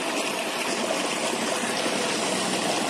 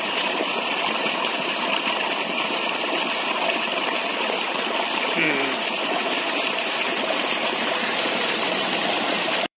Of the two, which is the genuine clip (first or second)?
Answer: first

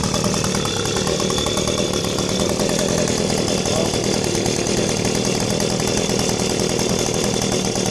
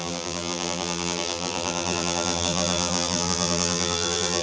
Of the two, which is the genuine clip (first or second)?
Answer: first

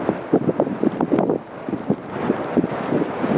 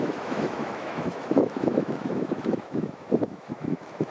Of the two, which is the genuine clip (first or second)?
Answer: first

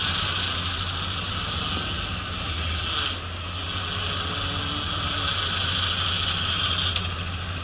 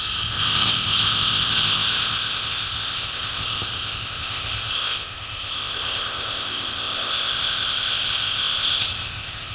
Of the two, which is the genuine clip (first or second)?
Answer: first